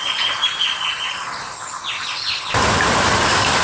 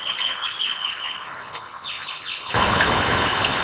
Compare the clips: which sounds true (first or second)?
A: first